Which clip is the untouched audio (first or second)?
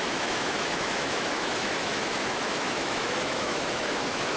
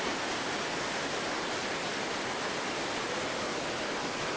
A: second